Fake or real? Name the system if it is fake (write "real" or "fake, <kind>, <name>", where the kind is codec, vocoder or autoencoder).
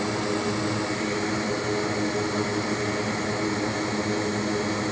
real